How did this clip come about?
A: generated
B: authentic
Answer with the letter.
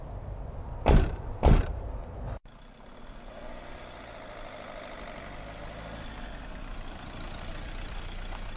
A